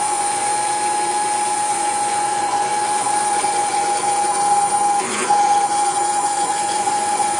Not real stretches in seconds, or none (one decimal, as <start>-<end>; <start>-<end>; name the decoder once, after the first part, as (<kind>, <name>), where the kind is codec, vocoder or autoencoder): 0.0-0.5 (vocoder, Vocos); 1.7-2.7; 3.3-7.4